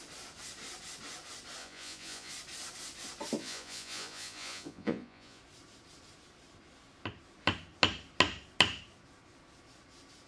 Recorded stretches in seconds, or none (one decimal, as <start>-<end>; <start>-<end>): 0.0-1.6; 2.3-3.4; 5.4-10.3